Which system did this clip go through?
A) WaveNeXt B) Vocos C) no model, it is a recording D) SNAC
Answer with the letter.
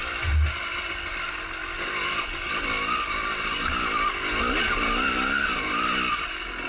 C